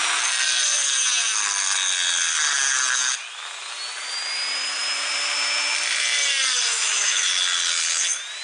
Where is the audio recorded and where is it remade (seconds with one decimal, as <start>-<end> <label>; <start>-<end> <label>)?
0.0-6.7 recorded; 6.7-7.3 remade; 7.3-8.4 recorded